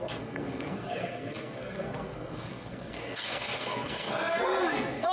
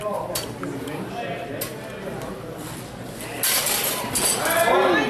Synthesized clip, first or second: first